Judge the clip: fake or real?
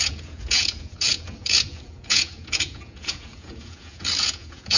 fake